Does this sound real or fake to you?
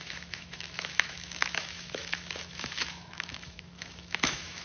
fake